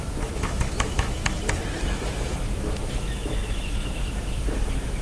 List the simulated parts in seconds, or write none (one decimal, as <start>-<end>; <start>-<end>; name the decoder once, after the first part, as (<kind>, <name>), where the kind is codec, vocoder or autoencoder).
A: 0.0-1.2 (autoencoder, DAC-VAE); 1.8-5.0